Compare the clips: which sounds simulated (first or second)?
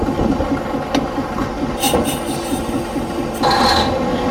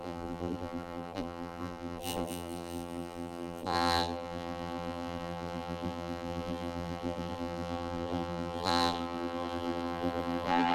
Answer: second